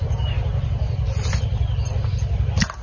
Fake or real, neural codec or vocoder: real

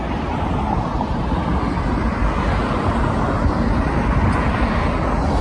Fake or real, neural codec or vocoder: real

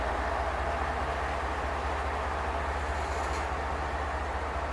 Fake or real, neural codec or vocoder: real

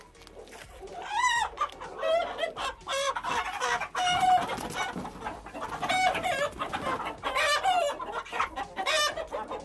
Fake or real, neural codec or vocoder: real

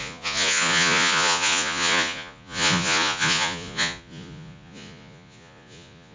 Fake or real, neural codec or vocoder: fake, vocoder, Vocos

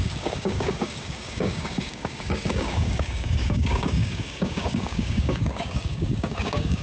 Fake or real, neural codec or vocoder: fake, codec, DAC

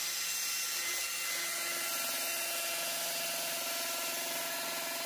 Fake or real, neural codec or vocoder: real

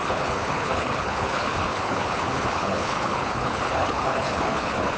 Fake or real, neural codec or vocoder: fake, codec, HILCodec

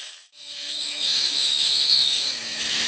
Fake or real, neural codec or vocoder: fake, autoencoder, DAC-VAE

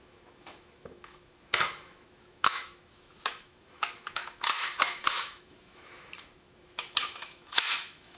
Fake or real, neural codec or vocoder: fake, autoencoder, DAC-VAE